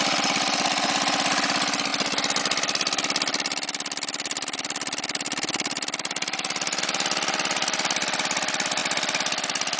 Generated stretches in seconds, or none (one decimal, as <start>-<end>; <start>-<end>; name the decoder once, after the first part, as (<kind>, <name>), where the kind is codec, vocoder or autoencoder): 3.3-6.8 (vocoder, BigVGAN v2); 8.8-9.8